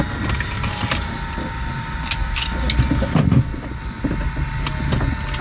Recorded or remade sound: recorded